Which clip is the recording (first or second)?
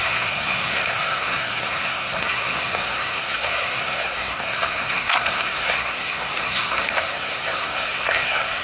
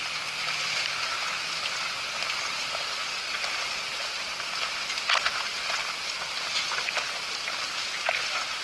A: second